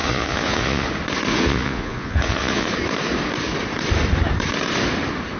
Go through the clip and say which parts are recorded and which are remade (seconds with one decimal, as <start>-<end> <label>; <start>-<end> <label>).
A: 0.0-0.9 remade; 0.9-1.3 recorded; 1.3-2.7 remade; 2.7-5.4 recorded